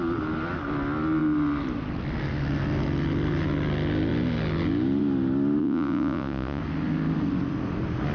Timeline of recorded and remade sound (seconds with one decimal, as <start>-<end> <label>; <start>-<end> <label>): 0.0-5.6 recorded; 5.6-6.6 remade; 6.6-8.1 recorded